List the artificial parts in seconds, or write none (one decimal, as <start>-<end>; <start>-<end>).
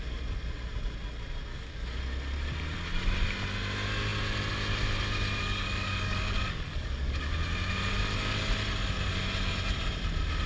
1.5-2.0; 5.4-7.3